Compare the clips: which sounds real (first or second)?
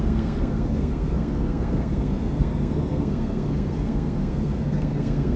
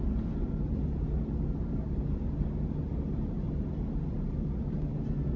second